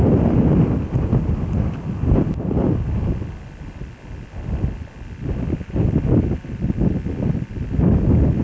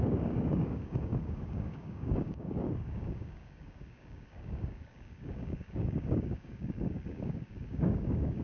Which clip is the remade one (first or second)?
second